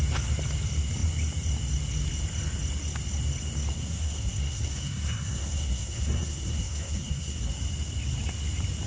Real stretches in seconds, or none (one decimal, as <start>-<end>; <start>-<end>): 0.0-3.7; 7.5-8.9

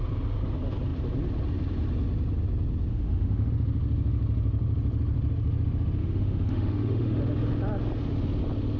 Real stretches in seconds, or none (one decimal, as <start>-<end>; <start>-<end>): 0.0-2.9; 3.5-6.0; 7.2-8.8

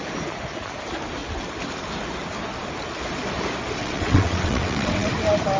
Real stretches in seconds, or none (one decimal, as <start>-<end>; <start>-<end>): 0.0-3.8; 5.1-5.6

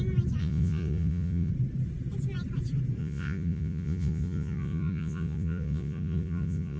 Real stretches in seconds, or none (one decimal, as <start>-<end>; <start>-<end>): 0.0-0.4; 1.5-3.0

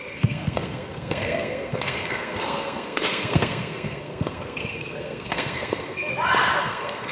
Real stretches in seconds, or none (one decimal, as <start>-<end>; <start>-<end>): 6.1-6.6

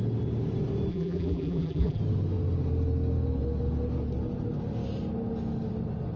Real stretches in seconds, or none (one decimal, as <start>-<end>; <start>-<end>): 0.0-0.9; 2.0-6.2

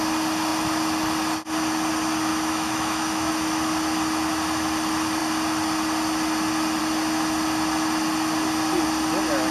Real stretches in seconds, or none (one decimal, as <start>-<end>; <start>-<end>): 0.0-2.3; 3.3-9.5

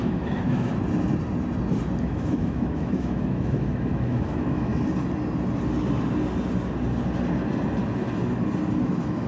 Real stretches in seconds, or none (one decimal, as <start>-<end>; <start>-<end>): 0.7-2.0; 4.7-8.8